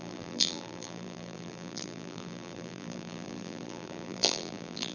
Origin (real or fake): fake